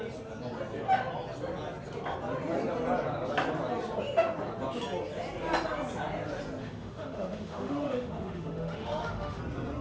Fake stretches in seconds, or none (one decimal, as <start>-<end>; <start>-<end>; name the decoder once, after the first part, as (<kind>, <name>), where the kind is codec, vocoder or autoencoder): 6.6-9.4 (autoencoder, DAC-VAE)